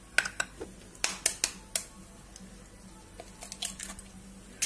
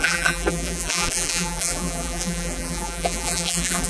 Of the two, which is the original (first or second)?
first